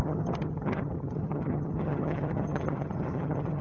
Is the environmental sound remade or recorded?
remade